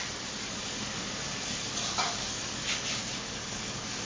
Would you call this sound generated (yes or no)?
yes